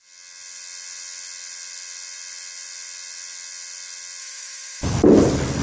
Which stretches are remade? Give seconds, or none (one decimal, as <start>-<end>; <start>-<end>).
4.2-4.9